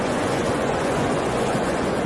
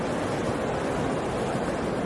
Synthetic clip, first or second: first